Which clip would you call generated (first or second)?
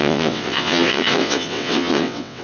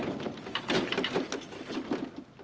first